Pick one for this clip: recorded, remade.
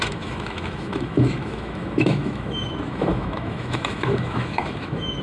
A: remade